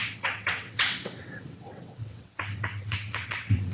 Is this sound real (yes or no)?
no